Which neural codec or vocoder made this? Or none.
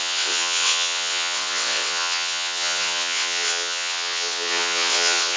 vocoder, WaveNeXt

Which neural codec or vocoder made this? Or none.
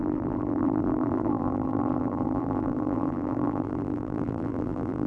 vocoder, BigVGAN v2